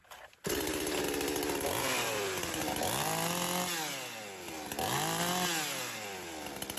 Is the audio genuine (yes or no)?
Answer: yes